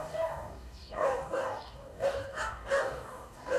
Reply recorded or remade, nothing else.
remade